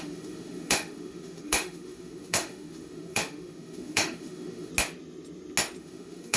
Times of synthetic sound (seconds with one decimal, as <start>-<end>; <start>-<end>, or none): 0.0-4.7; 5.8-6.4